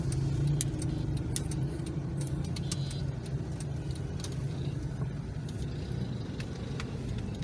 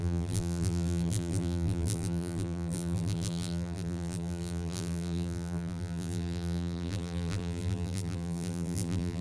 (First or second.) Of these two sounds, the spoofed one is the second